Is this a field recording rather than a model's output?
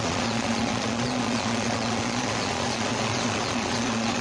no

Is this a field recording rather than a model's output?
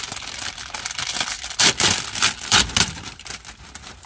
yes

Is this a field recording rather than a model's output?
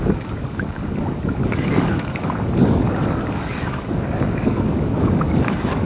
no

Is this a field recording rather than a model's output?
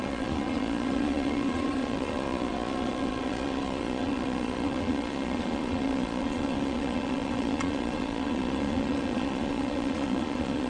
no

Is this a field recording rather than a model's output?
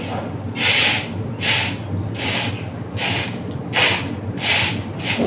yes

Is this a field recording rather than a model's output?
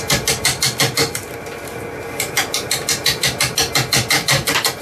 yes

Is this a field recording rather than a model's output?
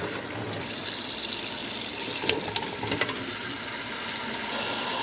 yes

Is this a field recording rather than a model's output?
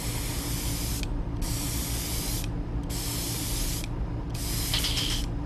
yes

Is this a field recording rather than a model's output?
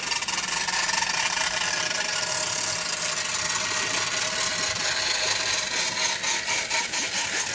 yes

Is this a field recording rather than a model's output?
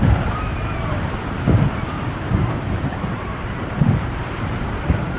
no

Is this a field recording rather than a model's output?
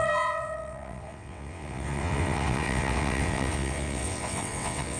no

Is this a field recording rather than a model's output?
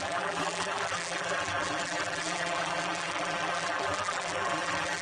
no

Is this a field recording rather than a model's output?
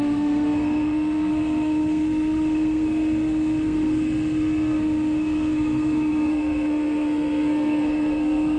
no